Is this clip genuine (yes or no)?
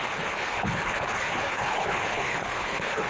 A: no